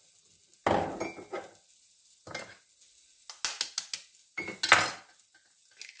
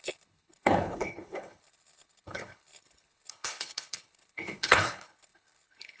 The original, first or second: first